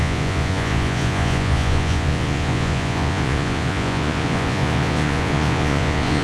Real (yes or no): no